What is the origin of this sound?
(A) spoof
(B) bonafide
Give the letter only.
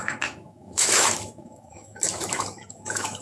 A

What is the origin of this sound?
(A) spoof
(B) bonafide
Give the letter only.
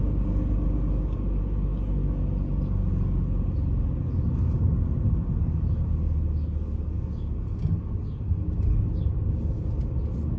B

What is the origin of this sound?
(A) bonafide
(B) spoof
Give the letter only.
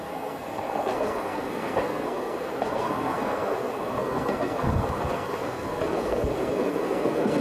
B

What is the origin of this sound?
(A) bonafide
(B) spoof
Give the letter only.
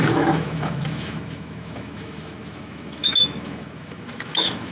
B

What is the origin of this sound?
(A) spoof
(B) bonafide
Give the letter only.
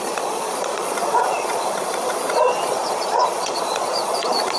A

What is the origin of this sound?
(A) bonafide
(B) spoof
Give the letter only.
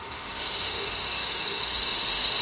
B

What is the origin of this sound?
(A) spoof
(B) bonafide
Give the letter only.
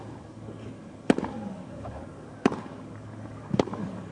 A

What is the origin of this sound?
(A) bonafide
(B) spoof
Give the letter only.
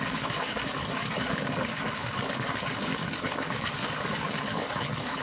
B